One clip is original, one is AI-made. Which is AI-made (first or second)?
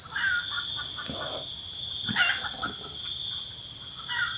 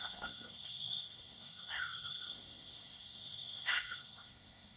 second